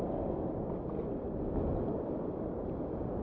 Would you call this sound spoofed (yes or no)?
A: no